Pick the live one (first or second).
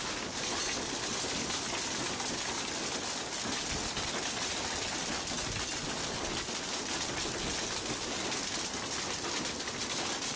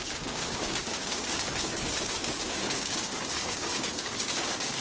first